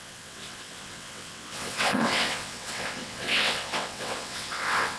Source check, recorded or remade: remade